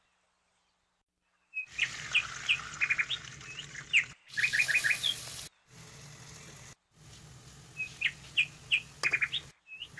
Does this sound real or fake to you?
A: real